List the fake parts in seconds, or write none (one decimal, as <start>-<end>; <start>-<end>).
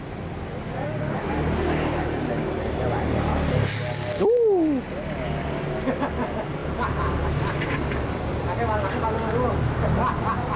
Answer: none